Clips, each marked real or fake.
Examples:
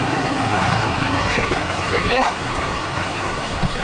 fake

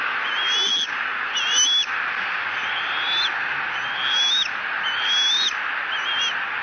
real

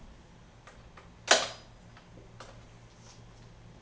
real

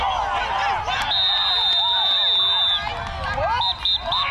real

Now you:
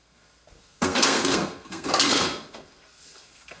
fake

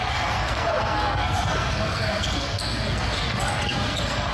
fake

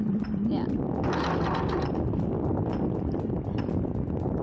real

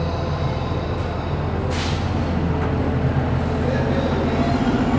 real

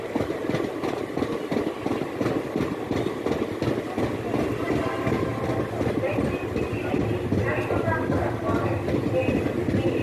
real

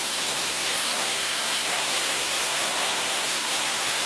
fake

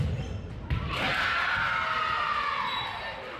real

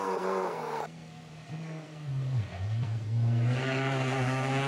fake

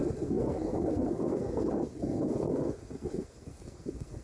fake